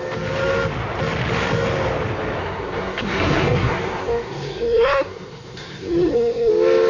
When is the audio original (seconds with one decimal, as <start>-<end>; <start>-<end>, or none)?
0.0-2.4; 6.5-6.9